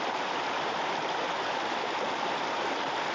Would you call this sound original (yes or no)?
yes